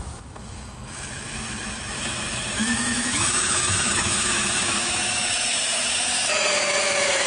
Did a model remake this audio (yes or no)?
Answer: yes